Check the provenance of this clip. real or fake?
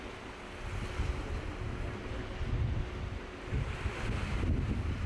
real